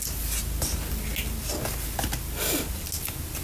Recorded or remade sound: recorded